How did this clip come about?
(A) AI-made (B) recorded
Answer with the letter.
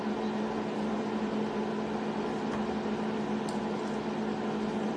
B